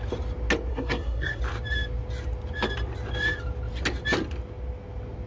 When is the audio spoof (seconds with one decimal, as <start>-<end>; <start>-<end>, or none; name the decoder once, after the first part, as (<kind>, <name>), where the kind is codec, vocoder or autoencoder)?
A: 0.7-1.4 (codec, SNAC)